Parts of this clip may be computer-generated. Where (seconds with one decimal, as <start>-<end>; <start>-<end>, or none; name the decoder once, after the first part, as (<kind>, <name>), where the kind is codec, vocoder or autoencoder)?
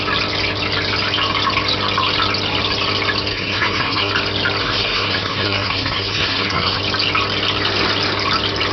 3.3-4.1 (codec, SNAC); 4.6-6.8